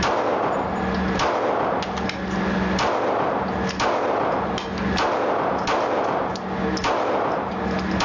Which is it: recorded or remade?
recorded